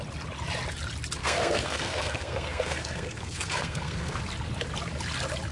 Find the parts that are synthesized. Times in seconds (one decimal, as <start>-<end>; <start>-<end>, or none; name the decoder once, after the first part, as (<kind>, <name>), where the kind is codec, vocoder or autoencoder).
1.2-4.2 (codec, SNAC)